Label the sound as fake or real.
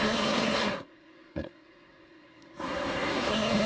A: fake